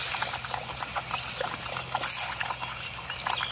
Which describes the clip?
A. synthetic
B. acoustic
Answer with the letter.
B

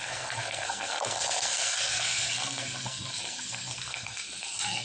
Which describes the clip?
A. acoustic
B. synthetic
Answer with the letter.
B